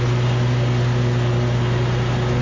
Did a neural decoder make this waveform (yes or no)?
no